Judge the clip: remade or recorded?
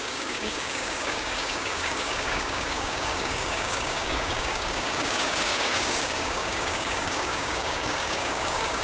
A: remade